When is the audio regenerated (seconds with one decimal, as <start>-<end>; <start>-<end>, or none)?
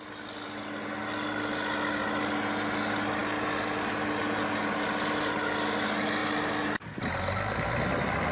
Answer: none